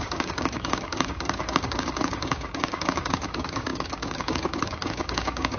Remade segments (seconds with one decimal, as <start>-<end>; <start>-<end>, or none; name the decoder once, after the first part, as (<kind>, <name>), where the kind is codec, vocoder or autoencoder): 0.0-5.6 (codec, DAC)